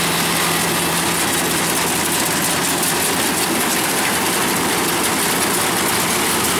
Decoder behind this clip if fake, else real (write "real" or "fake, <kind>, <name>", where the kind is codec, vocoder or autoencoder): real